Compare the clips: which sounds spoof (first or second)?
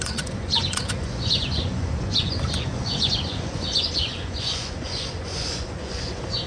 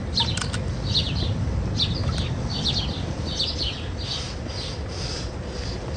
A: first